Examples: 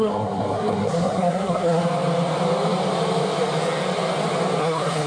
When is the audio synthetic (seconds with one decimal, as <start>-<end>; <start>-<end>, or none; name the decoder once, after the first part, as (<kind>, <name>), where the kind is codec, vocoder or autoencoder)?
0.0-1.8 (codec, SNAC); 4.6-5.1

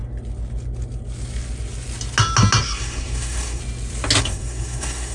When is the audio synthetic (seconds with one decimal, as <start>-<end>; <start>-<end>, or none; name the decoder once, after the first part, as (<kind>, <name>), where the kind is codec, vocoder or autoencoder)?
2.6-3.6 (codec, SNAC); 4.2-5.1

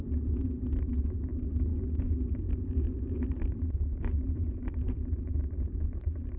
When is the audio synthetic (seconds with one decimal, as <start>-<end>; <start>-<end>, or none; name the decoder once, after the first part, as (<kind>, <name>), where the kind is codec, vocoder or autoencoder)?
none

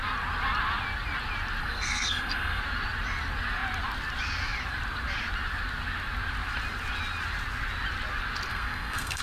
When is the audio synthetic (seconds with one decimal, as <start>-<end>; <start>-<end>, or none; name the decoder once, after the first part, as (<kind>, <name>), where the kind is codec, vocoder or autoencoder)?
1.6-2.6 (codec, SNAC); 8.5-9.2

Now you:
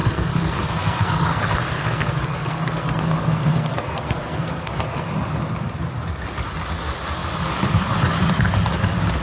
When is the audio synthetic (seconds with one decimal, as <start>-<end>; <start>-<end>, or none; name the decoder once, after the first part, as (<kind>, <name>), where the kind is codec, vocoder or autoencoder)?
0.0-5.1 (codec, SNAC)

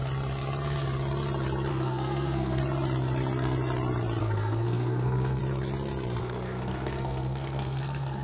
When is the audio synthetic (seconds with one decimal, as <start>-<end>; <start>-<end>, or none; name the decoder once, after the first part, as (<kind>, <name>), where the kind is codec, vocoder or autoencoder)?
1.7-2.6 (codec, SNAC); 4.2-5.4; 6.2-8.2

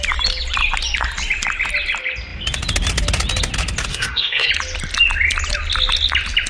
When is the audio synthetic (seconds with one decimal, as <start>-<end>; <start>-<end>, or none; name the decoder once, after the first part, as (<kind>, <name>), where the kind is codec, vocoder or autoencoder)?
3.9-4.5 (codec, SNAC)

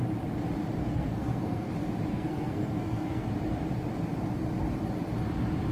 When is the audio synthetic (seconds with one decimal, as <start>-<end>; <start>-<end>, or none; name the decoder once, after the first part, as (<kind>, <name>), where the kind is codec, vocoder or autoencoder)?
0.8-1.7 (codec, SNAC); 2.1-3.3